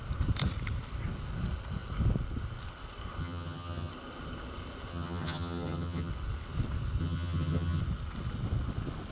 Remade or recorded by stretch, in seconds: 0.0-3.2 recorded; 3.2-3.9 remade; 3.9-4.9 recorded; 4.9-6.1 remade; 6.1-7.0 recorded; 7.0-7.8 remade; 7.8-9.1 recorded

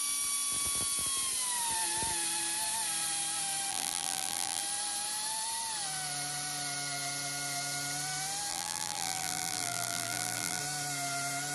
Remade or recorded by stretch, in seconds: 0.0-3.7 recorded; 3.7-4.6 remade; 4.6-8.5 recorded; 8.5-10.6 remade; 10.6-11.5 recorded

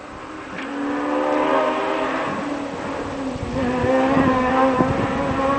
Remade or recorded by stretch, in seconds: 0.0-3.8 recorded; 3.8-4.5 remade; 4.5-5.6 recorded

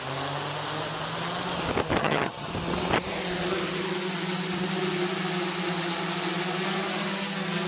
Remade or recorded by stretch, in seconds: 0.0-2.0 recorded; 2.0-2.5 remade; 2.5-7.7 recorded

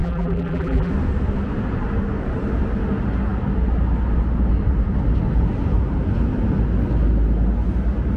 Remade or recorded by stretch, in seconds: 0.0-0.9 remade; 0.9-8.2 recorded

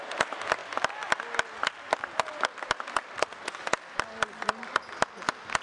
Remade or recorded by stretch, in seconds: 0.0-5.6 recorded

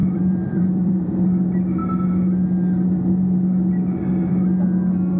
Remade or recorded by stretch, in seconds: 0.0-1.1 remade; 1.1-5.2 recorded